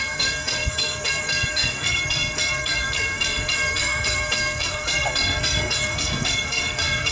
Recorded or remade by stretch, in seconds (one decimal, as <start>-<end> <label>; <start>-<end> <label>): 0.0-7.1 remade